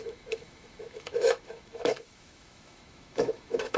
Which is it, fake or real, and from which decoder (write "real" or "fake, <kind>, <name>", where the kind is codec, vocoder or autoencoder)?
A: fake, autoencoder, DAC-VAE